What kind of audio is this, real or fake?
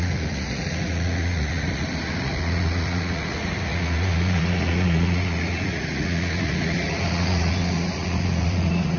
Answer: fake